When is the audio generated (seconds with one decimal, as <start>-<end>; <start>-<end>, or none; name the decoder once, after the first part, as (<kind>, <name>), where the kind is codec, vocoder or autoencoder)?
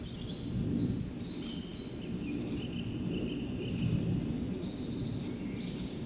none